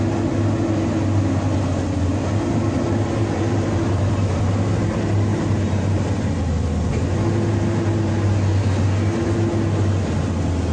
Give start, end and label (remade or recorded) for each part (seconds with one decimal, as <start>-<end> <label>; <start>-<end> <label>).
0.0-3.2 recorded; 3.2-4.4 remade; 4.4-5.3 recorded; 5.3-6.0 remade; 6.0-10.7 recorded